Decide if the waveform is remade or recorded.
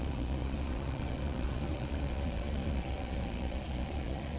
remade